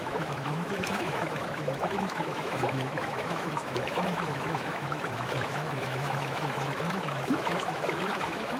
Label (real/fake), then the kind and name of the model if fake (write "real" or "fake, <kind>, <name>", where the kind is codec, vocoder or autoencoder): fake, autoencoder, DAC-VAE